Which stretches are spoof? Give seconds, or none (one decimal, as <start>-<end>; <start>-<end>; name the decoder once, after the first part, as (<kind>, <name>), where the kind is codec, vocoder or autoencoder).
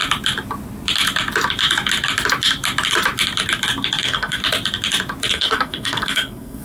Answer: 4.0-4.4 (codec, SNAC); 5.3-6.6